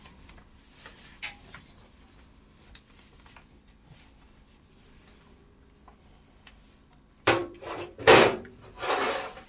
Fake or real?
fake